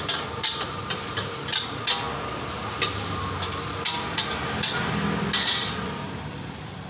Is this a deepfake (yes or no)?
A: no